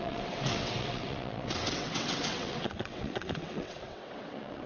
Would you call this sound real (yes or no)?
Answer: no